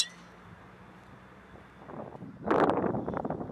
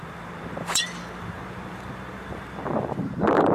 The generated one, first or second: second